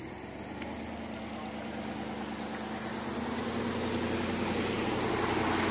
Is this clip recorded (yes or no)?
yes